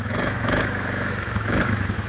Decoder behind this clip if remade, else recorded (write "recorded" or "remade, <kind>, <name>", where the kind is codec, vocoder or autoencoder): remade, autoencoder, DAC-VAE